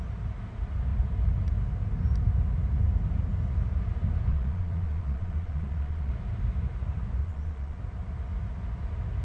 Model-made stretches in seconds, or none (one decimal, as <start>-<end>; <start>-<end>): 4.3-6.1; 7.2-7.8